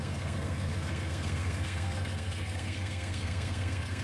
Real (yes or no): no